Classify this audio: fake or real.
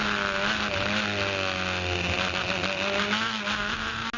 real